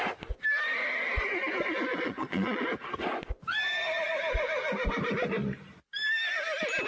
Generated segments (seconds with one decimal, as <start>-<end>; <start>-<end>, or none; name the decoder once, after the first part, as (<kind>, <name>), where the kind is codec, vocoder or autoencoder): 1.9-2.6 (vocoder, Vocos)